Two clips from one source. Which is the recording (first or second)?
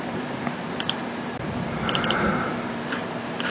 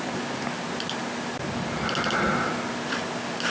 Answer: second